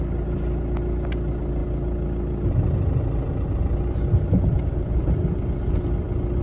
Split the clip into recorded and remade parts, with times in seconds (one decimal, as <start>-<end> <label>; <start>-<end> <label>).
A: 0.0-6.4 recorded